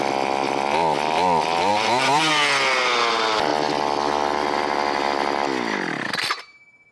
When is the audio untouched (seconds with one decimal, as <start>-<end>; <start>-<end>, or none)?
0.0-1.7; 2.3-6.9